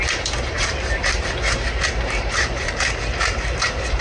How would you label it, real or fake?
fake